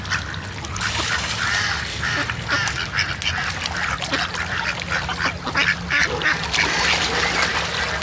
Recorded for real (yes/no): yes